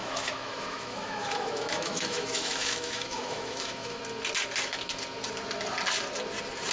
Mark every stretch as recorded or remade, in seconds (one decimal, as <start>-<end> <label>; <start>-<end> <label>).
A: 0.0-4.0 remade; 4.0-6.7 recorded